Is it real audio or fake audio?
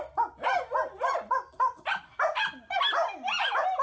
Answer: real